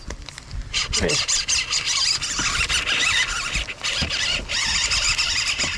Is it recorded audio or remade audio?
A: recorded